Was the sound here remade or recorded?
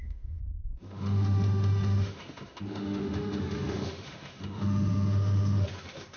remade